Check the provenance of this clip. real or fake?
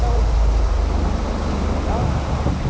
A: real